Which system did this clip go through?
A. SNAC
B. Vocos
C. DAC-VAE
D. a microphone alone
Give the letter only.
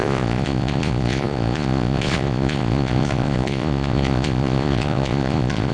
B